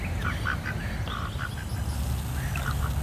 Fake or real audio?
real